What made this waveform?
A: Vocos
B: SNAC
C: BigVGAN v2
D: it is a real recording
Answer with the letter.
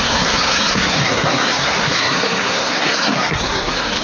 B